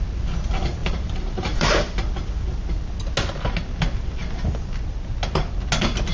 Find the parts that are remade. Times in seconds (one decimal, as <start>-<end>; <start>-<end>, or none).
0.8-2.0